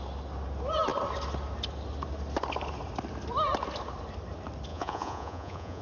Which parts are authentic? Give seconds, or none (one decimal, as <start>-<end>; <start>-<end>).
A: 0.0-4.7